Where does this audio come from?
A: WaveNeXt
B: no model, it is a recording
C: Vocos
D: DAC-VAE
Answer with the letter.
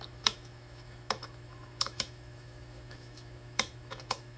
D